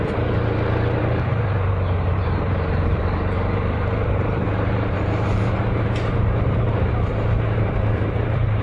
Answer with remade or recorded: remade